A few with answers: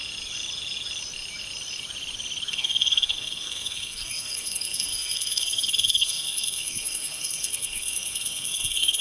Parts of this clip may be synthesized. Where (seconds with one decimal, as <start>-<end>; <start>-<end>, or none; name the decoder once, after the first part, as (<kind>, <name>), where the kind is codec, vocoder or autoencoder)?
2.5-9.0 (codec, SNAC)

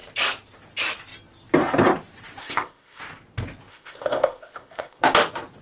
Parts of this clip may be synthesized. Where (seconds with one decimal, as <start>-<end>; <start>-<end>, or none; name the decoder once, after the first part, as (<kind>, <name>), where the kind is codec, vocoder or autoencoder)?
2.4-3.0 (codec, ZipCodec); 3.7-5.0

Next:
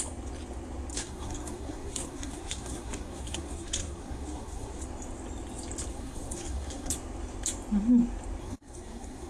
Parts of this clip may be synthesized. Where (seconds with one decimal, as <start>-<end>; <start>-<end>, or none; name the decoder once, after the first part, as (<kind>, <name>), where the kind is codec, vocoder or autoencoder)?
0.9-4.8 (codec, SNAC); 5.9-6.9; 8.4-9.3

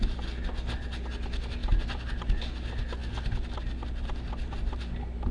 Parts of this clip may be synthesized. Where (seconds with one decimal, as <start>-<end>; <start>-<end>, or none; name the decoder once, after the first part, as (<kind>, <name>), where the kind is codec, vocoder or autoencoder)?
none

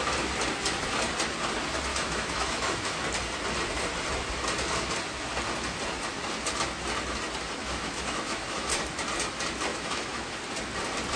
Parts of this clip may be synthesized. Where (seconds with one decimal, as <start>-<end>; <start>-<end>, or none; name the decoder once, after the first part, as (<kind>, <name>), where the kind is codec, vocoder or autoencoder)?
1.9-3.0 (autoencoder, DAC-VAE); 7.6-8.8; 9.7-10.4

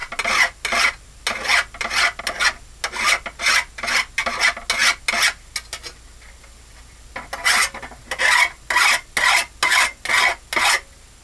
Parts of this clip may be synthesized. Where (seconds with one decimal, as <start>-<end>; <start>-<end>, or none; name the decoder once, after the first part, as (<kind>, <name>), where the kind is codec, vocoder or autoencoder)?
none